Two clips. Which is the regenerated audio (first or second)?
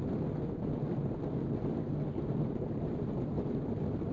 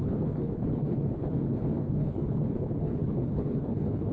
second